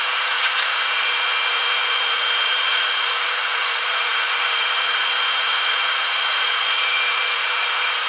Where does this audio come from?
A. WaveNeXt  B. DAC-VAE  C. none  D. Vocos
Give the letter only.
D